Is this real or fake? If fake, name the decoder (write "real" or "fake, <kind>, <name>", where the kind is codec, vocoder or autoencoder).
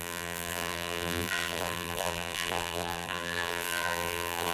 fake, vocoder, BigVGAN v2